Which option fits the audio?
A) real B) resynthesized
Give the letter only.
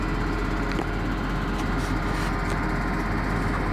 A